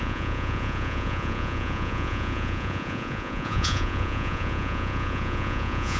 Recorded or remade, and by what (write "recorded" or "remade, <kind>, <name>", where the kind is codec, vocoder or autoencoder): remade, vocoder, Vocos